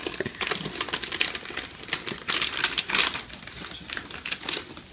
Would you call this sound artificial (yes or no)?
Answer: no